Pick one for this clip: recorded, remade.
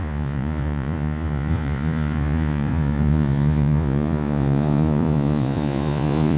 remade